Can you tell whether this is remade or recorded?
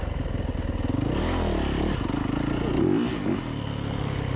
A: recorded